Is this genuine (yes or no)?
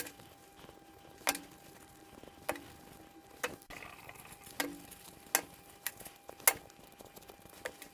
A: yes